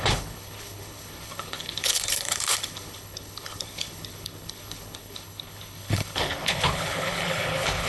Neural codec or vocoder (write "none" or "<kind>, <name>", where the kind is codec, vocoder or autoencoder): codec, HILCodec